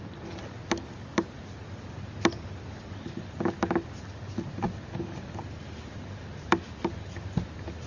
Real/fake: real